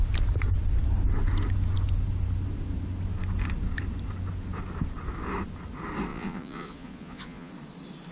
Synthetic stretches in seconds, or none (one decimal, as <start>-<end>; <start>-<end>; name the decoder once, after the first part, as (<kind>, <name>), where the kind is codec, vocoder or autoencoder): 6.1-7.5 (vocoder, Vocos)